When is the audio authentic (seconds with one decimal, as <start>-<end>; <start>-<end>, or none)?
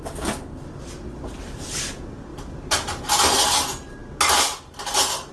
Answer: 0.0-2.3; 3.0-5.3